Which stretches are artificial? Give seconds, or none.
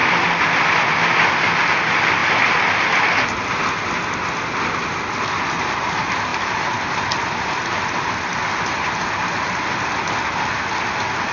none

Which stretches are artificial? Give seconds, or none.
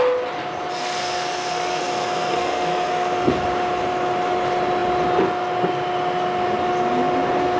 0.8-3.3 (codec, SNAC)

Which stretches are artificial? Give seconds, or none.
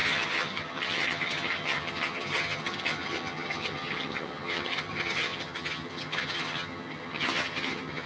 0.0-8.1 (vocoder, HiFi-GAN)